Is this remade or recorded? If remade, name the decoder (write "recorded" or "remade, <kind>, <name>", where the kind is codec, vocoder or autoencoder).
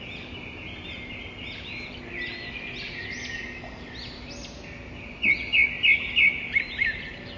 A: recorded